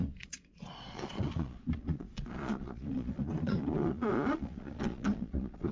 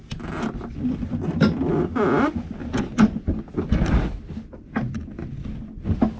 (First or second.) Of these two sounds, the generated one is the first